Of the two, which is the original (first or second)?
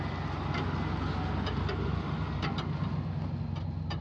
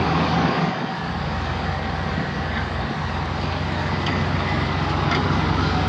first